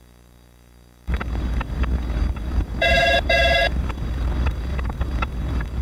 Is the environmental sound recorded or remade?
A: remade